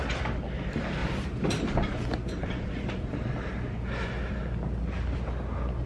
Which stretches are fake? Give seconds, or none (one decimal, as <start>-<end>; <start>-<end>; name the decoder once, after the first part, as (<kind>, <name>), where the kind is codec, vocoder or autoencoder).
none